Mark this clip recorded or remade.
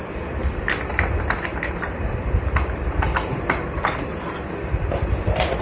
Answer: remade